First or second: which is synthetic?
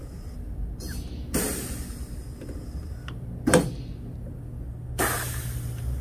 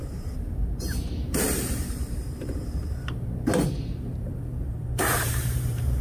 second